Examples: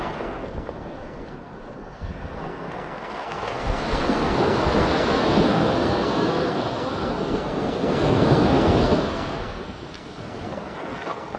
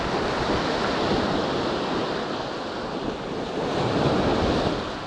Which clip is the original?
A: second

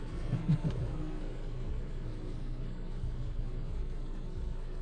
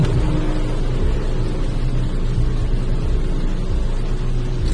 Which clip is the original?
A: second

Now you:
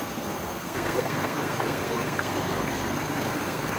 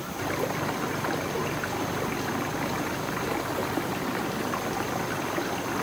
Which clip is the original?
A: second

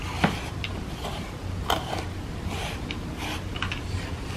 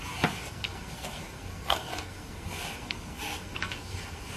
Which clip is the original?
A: first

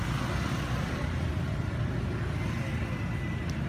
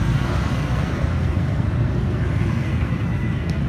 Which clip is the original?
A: first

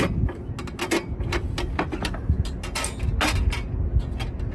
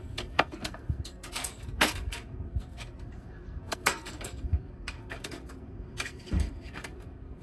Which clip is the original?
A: first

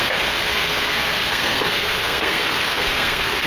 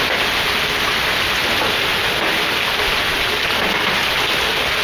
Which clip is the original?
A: second